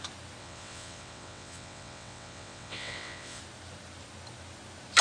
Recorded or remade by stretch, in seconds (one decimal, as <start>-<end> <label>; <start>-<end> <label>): 0.0-0.4 recorded; 0.4-3.4 remade; 3.4-5.0 recorded